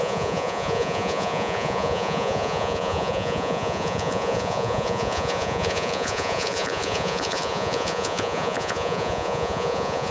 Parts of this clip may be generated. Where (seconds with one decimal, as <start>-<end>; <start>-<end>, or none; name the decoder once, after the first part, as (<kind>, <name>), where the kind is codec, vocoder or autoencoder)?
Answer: 0.0-10.1 (vocoder, Vocos)